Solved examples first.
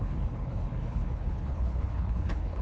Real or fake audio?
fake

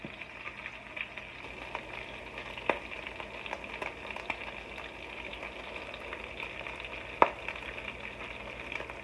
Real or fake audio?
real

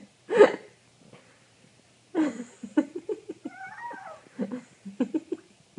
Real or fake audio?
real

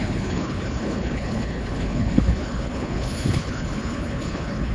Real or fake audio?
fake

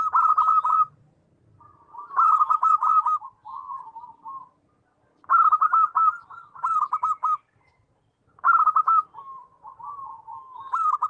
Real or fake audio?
real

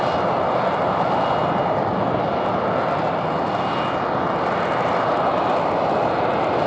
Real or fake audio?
real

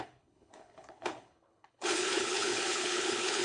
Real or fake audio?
fake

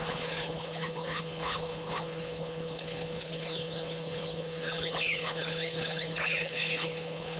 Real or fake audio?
fake